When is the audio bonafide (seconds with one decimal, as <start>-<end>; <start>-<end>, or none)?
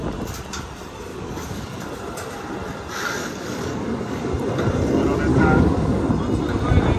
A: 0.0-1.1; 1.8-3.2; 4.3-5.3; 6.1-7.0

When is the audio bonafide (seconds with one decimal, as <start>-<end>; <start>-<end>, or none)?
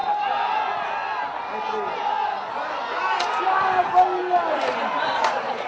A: 0.0-5.7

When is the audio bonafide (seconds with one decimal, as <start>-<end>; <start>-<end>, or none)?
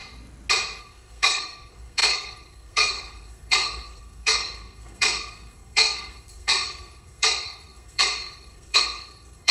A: 0.0-0.8